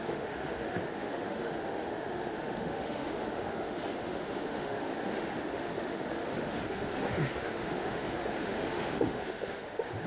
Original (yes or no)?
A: no